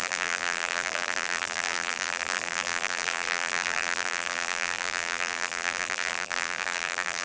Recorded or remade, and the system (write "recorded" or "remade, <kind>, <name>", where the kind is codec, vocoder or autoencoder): remade, vocoder, BigVGAN v2